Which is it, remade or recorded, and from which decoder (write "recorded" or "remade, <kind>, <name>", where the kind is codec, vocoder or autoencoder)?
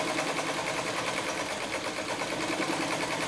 recorded